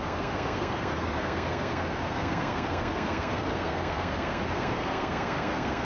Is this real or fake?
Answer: fake